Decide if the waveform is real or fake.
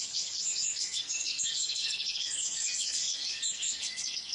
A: fake